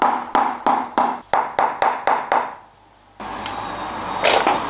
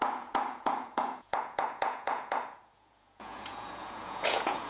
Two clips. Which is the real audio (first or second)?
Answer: first